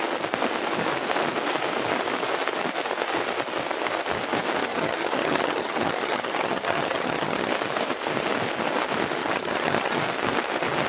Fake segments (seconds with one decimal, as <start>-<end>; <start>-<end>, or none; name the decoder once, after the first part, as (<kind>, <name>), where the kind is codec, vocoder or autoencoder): 4.6-7.5 (vocoder, HiFi-GAN); 9.2-10.0